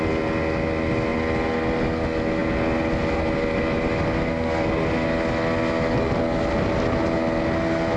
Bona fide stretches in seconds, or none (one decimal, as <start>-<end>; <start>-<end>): 0.0-8.0